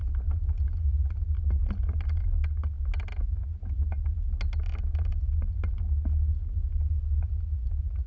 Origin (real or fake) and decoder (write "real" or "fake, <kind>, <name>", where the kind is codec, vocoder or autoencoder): real